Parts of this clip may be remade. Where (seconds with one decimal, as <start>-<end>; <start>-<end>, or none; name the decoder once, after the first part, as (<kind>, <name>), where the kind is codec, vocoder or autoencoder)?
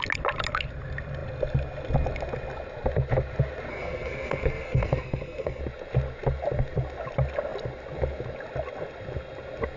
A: 3.7-5.6 (codec, SNAC)